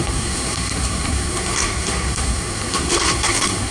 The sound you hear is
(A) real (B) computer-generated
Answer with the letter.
B